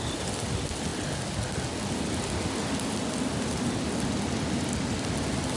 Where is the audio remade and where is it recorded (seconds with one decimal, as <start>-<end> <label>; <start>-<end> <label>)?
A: 0.0-5.6 recorded

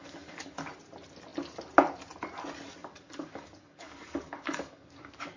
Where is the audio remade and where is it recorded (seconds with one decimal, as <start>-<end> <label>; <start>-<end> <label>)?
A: 0.0-0.7 remade; 0.7-2.8 recorded; 2.8-5.4 remade

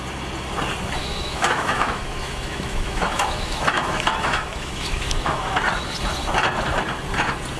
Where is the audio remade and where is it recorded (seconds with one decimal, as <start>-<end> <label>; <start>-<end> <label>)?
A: 0.0-1.0 recorded; 1.0-5.6 remade; 5.6-7.6 recorded

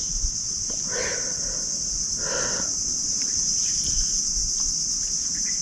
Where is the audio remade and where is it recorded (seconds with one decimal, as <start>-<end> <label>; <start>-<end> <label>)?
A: 0.0-5.6 recorded

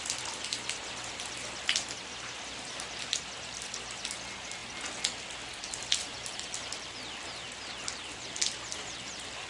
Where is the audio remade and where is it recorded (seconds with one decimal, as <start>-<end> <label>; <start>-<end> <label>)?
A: 0.0-9.5 recorded

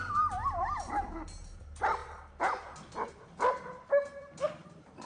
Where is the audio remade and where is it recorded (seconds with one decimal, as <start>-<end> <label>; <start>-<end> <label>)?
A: 0.0-5.1 remade